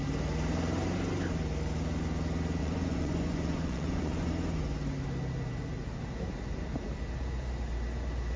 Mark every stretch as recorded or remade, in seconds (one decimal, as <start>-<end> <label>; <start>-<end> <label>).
0.0-2.6 recorded; 2.6-4.3 remade; 4.3-8.4 recorded